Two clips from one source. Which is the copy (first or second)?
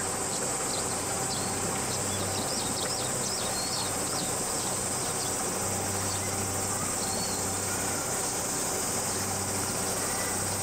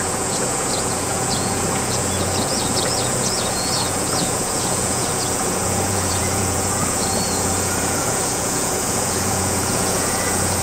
second